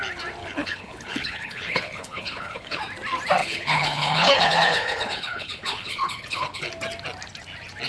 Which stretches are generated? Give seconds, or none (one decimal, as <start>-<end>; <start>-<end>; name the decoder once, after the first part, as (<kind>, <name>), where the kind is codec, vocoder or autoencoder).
0.4-2.8 (codec, HILCodec); 3.4-6.7

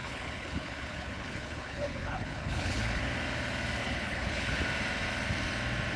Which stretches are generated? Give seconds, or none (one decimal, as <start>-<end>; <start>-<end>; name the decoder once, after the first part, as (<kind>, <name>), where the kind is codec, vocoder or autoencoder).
0.0-3.0 (codec, HILCodec); 3.8-4.6

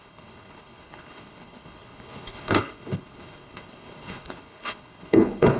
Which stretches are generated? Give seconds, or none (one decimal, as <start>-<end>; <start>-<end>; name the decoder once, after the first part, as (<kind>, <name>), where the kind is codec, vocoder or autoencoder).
0.0-5.6 (codec, HILCodec)

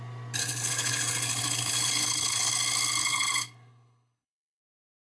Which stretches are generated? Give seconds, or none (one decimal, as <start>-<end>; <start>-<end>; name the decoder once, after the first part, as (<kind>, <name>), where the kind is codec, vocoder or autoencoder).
0.4-2.5 (codec, HILCodec); 3.0-4.6

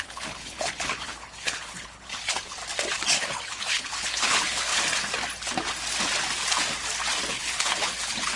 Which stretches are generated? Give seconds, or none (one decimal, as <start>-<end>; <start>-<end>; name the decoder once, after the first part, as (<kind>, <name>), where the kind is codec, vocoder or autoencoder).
0.0-2.6 (codec, HILCodec); 3.2-4.7; 7.3-8.4

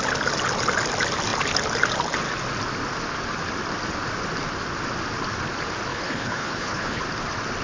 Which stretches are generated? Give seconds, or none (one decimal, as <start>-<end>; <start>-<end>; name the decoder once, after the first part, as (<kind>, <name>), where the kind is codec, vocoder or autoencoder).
5.9-7.0 (codec, HILCodec)